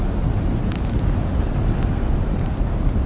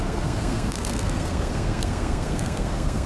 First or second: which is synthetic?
second